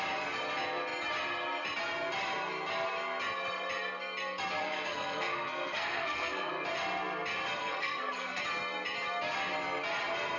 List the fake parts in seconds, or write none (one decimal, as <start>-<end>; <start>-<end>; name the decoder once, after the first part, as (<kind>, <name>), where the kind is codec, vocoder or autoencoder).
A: 4.6-6.5 (codec, SNAC); 7.6-8.4